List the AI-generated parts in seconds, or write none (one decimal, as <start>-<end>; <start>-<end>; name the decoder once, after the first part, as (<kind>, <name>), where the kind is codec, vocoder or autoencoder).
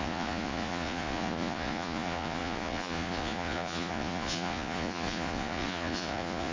0.0-6.5 (vocoder, Vocos)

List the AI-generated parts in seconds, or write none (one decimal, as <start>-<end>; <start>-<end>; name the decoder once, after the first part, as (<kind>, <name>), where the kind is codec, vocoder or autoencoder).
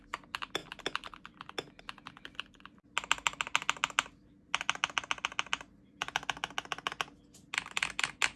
none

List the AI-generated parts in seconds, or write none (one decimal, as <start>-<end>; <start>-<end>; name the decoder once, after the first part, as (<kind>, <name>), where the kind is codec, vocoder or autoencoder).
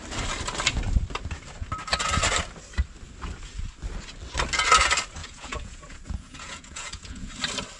5.2-7.3 (vocoder, Vocos)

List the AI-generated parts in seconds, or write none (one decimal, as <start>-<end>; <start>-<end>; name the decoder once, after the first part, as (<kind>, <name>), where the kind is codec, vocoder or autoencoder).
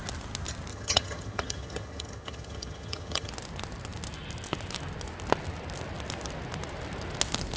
0.7-3.3 (vocoder, HiFi-GAN)